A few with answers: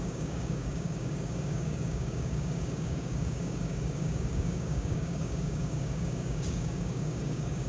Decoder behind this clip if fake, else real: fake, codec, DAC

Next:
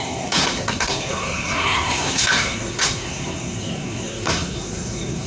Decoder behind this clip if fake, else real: fake, codec, SNAC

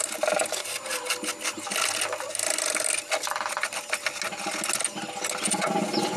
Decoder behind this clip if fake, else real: real